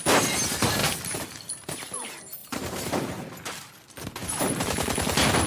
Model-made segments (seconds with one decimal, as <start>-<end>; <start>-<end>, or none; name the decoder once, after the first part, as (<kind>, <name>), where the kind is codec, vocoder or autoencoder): 0.8-1.7 (vocoder, BigVGAN v2); 2.4-3.6; 4.2-5.0